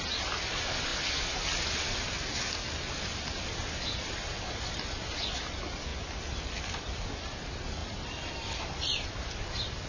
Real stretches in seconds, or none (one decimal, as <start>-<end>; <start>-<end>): 0.9-2.9; 5.9-6.6